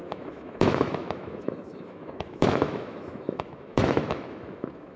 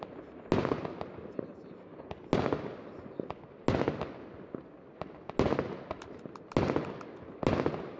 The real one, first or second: second